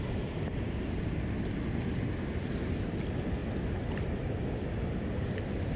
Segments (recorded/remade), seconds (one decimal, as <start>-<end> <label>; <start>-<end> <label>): 0.0-5.8 recorded